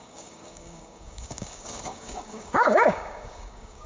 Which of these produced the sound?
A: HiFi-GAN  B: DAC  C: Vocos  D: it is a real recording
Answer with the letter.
B